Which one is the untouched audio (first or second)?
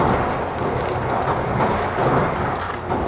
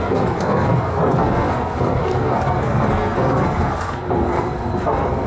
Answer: first